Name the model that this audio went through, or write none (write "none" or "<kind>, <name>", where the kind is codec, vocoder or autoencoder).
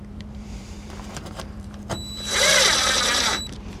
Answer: vocoder, BigVGAN v2